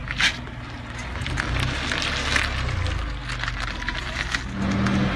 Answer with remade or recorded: recorded